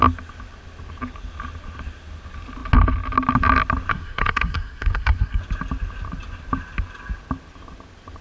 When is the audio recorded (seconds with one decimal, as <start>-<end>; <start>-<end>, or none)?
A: 0.0-3.9; 5.4-8.2